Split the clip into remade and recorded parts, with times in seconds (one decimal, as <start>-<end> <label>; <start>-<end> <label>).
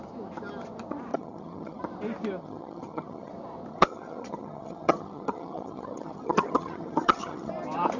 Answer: 0.0-1.1 recorded; 1.1-1.8 remade; 1.8-2.4 recorded; 2.4-3.3 remade; 3.3-3.7 recorded; 3.7-7.5 remade; 7.5-8.0 recorded